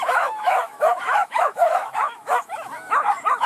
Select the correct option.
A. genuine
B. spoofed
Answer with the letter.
B